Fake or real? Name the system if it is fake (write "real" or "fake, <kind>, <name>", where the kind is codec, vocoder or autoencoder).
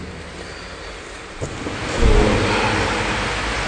real